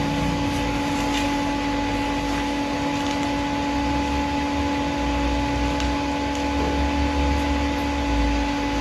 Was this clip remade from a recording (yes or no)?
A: no